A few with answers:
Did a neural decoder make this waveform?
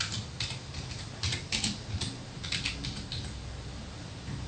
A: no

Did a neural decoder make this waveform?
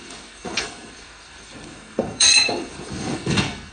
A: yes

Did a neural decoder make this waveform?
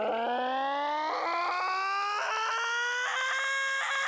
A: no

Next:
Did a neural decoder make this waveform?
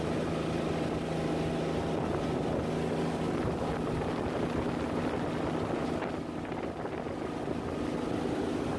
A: no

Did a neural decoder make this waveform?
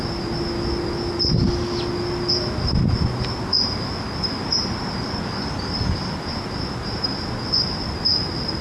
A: no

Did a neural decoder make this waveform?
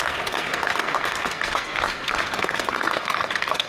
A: yes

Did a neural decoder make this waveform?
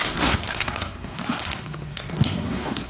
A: yes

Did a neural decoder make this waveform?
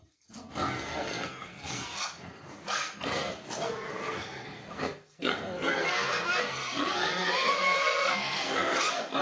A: yes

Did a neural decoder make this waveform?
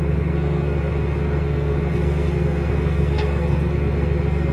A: yes